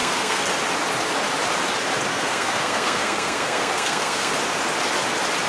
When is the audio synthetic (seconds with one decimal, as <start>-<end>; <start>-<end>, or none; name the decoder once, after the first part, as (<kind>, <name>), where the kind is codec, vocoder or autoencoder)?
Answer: 0.0-0.5 (codec, SNAC); 2.1-4.3